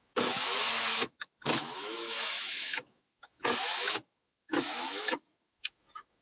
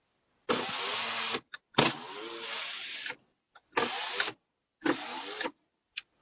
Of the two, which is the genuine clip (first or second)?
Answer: second